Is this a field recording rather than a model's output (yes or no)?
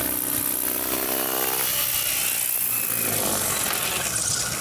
yes